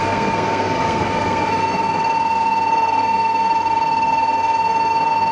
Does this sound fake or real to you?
fake